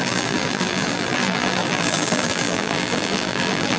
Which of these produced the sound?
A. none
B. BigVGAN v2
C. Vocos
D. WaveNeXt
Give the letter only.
B